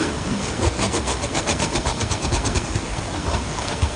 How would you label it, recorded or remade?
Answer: remade